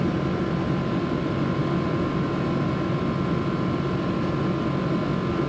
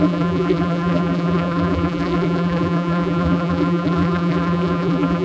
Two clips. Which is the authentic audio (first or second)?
first